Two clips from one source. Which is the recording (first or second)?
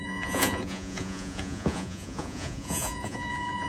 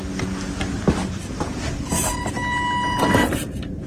second